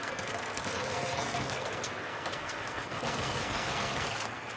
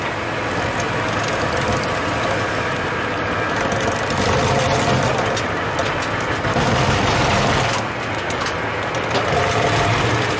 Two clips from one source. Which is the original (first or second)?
second